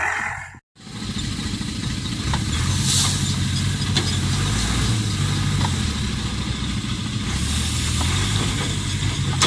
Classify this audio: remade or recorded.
recorded